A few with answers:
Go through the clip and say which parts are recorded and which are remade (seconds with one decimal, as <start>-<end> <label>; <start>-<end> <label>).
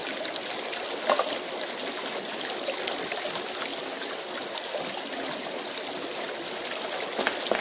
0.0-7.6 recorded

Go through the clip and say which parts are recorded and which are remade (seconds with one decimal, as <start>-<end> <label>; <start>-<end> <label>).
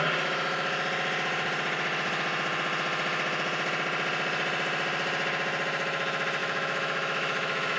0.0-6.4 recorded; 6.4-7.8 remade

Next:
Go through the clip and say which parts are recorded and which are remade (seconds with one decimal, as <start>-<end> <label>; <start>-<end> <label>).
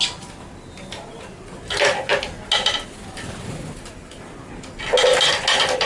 0.0-5.9 recorded